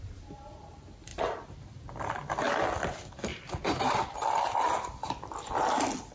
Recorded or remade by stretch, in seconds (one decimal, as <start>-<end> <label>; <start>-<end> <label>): 0.0-3.3 recorded; 3.3-5.5 remade; 5.5-6.1 recorded